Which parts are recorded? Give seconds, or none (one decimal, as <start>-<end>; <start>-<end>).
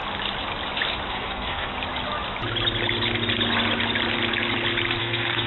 0.0-1.1; 1.7-5.0